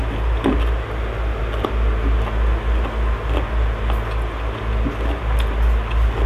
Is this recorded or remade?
recorded